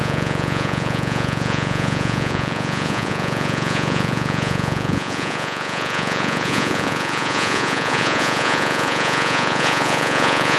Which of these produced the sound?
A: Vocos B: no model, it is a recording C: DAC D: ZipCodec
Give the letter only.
A